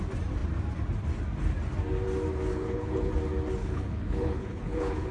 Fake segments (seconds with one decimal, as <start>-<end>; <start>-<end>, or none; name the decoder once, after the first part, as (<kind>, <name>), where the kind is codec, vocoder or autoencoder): 2.5-3.1 (codec, HILCodec); 3.6-5.1